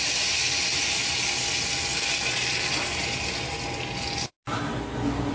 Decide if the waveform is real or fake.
real